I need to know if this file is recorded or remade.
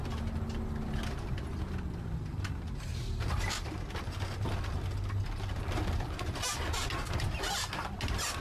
recorded